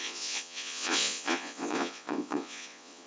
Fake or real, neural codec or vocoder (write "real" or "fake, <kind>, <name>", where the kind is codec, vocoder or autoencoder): fake, vocoder, Vocos